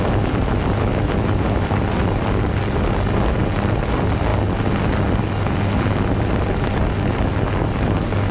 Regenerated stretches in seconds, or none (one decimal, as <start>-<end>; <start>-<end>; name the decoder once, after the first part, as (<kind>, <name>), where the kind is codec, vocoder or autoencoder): none